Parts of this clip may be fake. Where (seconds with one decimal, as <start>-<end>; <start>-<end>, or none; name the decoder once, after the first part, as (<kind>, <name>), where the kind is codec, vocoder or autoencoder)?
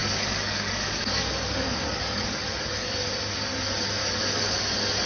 0.0-3.1 (codec, DAC); 4.0-4.6